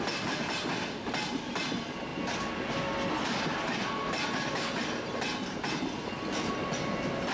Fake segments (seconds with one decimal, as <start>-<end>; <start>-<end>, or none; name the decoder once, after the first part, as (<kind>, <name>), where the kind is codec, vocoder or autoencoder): none